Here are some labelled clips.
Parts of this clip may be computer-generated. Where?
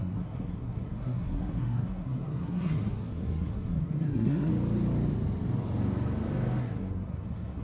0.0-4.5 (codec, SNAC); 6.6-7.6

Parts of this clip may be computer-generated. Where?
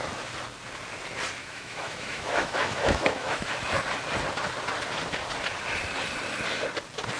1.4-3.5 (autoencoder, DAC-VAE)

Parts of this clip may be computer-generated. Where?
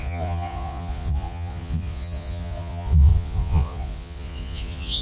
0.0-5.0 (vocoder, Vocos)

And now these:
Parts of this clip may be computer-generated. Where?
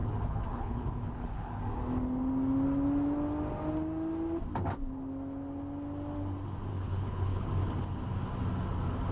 0.0-1.6 (codec, HILCodec); 6.7-7.5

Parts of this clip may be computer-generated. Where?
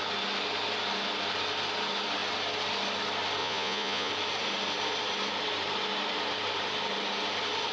3.4-4.1 (vocoder, Vocos)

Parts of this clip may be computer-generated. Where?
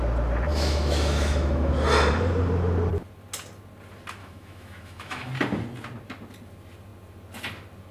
0.5-1.7 (autoencoder, DAC-VAE); 4.2-5.3